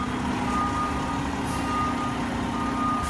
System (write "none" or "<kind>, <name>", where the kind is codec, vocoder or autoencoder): none